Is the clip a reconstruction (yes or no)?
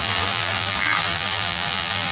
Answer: yes